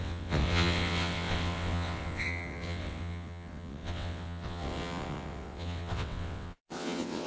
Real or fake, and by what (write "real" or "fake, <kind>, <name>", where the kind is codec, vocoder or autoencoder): fake, vocoder, WaveNeXt